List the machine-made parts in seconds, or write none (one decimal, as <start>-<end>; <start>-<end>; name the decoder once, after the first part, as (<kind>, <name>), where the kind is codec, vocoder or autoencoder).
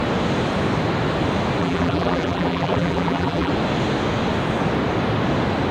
1.6-3.5 (vocoder, BigVGAN v2)